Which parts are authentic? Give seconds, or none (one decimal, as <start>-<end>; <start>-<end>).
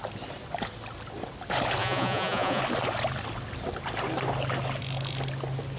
0.0-1.8; 2.6-5.8